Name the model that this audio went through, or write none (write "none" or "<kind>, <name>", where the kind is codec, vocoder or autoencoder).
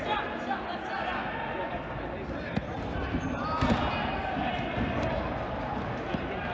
none